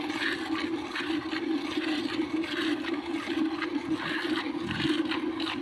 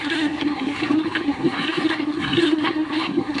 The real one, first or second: first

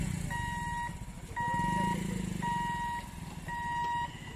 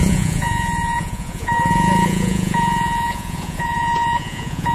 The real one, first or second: first